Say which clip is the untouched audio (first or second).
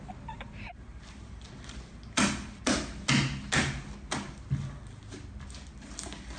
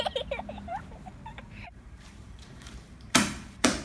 first